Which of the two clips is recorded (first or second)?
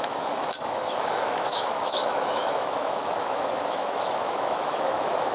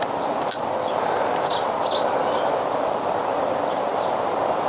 second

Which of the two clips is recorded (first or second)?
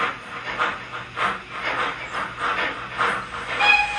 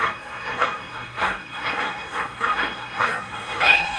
first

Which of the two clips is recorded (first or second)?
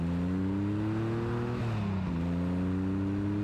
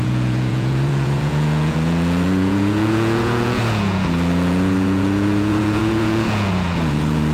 first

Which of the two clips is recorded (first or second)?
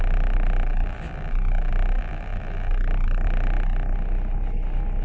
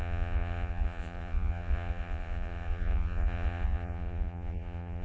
first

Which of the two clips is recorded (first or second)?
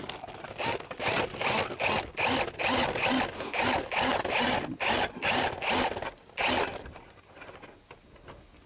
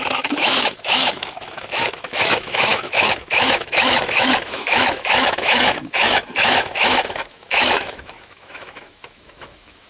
first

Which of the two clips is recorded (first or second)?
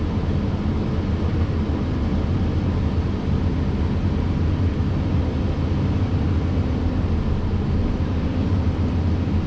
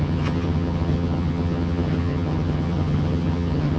first